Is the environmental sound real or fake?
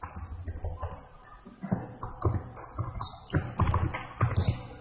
real